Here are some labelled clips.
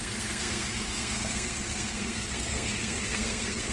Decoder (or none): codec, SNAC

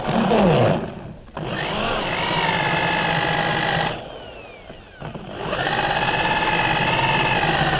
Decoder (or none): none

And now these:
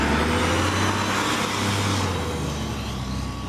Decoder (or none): none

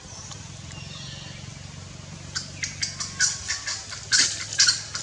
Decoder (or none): none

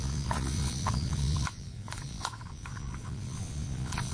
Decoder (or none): vocoder, Vocos